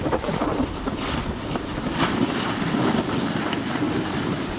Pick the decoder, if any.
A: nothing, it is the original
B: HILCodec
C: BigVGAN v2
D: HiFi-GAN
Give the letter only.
A